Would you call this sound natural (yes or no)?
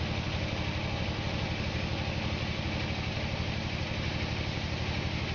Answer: yes